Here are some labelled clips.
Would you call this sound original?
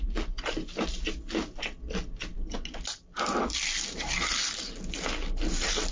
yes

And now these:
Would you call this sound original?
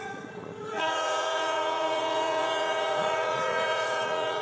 no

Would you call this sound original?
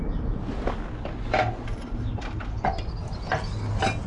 yes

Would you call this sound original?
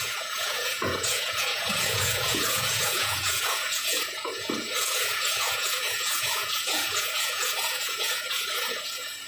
no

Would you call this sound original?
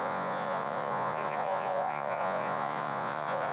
no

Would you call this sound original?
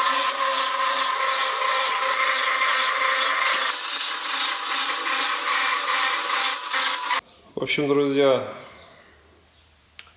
yes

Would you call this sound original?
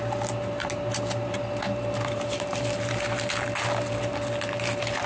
yes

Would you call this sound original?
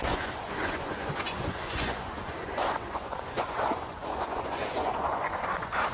no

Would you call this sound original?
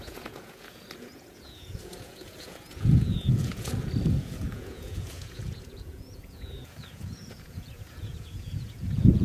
no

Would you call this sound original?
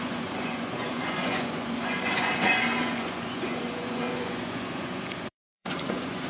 no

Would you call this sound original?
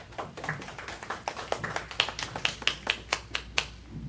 yes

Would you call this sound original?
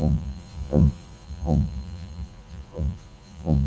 no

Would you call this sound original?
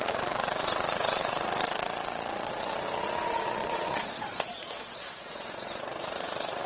no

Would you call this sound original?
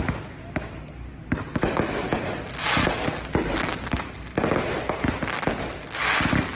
yes